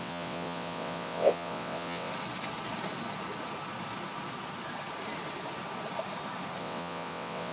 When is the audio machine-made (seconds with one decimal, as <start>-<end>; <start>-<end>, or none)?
0.0-2.1; 6.6-7.5